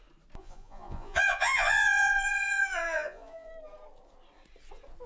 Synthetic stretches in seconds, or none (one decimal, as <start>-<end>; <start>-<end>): 0.4-3.5